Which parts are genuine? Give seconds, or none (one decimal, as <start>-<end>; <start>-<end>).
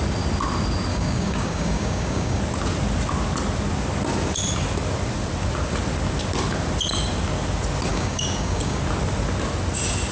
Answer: 0.0-0.9; 2.4-7.9; 8.8-10.1